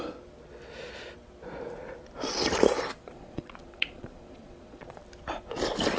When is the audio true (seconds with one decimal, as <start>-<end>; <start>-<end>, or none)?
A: 0.0-3.0; 5.0-6.0